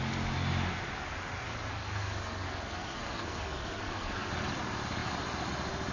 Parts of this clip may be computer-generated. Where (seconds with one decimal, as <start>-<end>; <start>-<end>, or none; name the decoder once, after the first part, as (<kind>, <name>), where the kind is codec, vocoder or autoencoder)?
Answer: 1.7-4.3 (codec, SNAC)